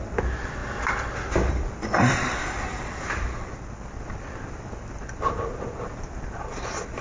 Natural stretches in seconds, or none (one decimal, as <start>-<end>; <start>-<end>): 0.6-1.5